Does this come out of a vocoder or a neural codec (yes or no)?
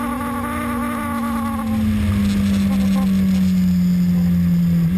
no